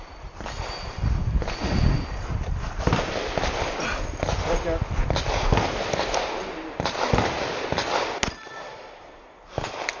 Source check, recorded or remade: recorded